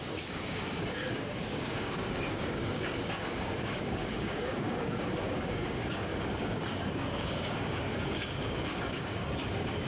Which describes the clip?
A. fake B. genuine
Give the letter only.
A